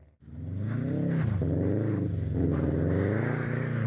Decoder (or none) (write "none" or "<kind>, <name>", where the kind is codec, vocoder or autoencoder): none